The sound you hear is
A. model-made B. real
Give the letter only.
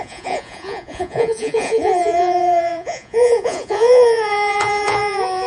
A